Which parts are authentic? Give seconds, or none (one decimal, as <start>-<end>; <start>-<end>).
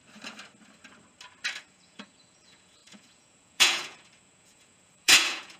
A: 0.0-1.6